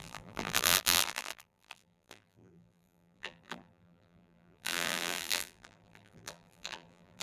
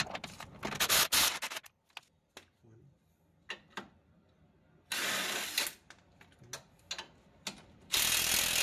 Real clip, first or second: second